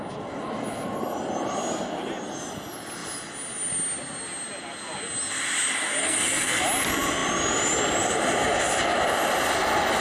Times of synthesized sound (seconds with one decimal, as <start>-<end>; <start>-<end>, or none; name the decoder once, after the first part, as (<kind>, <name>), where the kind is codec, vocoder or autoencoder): 6.0-6.6 (codec, SNAC)